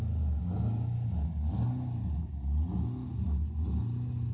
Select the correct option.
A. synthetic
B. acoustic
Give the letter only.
B